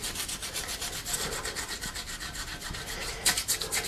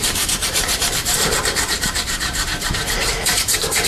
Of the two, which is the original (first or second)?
first